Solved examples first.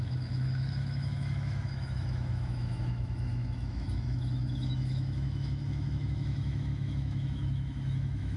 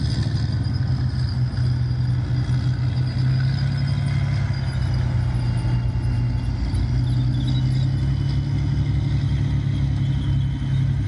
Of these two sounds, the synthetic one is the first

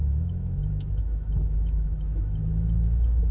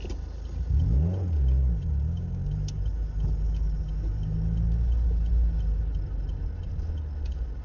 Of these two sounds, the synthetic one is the first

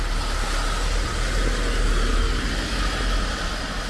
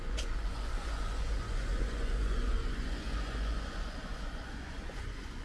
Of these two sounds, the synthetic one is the second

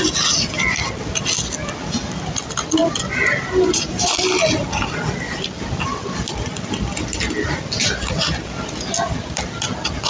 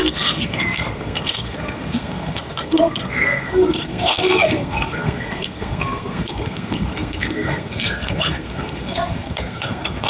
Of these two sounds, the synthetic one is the second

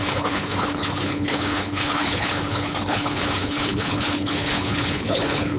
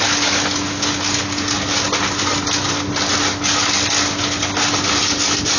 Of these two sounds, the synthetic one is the first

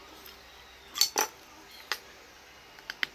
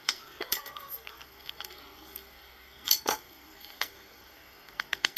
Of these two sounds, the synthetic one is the second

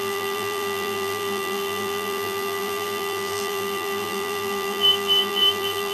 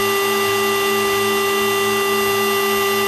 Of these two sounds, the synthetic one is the first